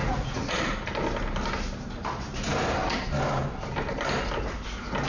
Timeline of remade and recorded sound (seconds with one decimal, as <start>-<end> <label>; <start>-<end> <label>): 0.0-0.6 remade; 0.6-5.1 recorded